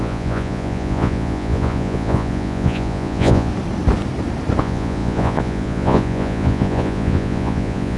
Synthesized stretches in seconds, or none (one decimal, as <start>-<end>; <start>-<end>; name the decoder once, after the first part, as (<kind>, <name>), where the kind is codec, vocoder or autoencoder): 0.0-3.5 (vocoder, Vocos); 4.6-8.0

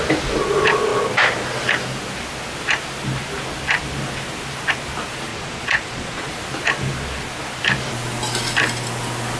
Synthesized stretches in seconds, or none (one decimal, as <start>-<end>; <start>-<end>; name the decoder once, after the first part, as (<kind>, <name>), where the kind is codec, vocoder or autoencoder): 5.3-6.3 (vocoder, Vocos)

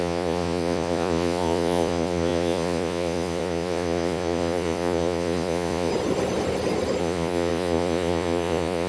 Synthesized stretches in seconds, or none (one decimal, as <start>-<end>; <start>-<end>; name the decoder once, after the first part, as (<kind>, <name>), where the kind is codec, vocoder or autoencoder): 0.0-5.9 (vocoder, Vocos); 7.0-8.9

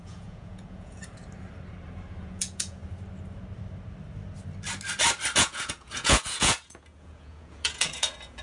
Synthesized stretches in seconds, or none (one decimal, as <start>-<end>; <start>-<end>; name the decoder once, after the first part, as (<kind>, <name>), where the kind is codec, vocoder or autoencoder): 0.0-1.2 (vocoder, Vocos); 2.2-2.8; 5.4-8.4

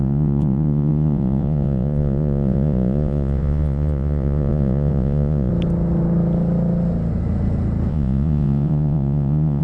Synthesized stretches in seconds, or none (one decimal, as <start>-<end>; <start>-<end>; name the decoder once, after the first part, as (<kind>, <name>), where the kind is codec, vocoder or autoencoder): 0.0-5.5 (vocoder, Vocos); 7.9-9.6

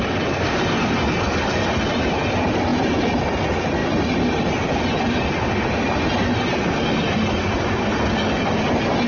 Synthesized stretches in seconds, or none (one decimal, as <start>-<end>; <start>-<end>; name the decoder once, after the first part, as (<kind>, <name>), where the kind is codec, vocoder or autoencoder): none

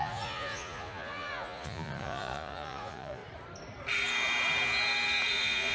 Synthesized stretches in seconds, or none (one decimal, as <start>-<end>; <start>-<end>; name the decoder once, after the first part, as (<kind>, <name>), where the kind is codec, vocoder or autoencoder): 0.0-3.2 (vocoder, Vocos); 5.3-5.7